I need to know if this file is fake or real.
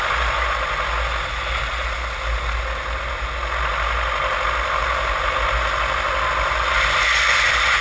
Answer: real